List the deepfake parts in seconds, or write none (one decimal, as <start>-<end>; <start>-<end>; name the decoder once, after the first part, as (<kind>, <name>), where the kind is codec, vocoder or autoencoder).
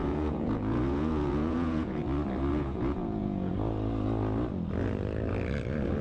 0.0-2.0 (vocoder, Vocos); 2.5-3.5